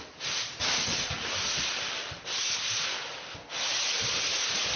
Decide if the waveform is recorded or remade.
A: recorded